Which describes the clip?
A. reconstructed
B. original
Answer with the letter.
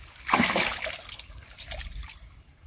B